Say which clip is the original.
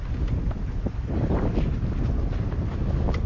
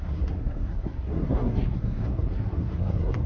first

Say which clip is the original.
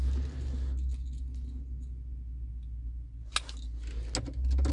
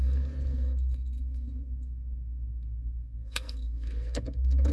first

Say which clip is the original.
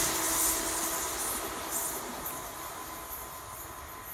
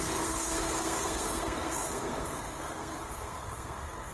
first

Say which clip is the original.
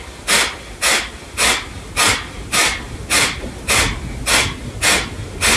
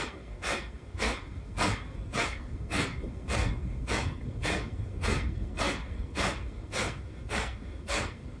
first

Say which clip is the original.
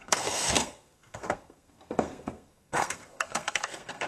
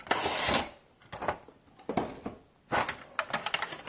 second